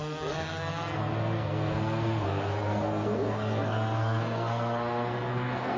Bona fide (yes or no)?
no